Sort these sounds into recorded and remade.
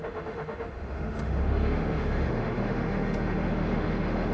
remade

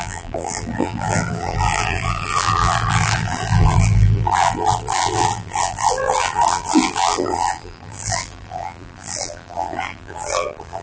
remade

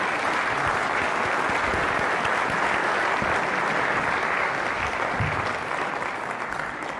recorded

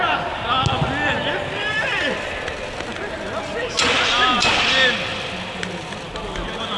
recorded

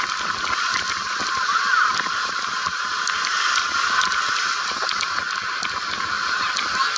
recorded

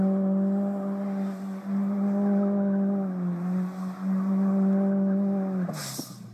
recorded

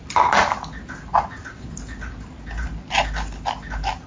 recorded